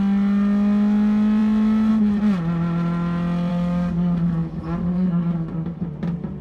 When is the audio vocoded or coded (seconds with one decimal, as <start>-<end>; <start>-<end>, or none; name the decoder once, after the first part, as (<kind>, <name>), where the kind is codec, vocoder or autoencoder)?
3.5-5.8 (codec, DAC)